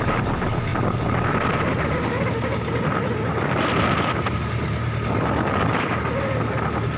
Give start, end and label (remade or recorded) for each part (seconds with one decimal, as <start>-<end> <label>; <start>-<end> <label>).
0.0-7.0 recorded